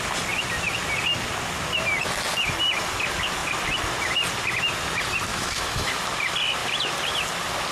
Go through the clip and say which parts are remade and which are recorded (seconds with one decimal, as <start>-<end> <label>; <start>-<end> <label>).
0.0-5.3 recorded; 5.3-5.9 remade; 5.9-7.7 recorded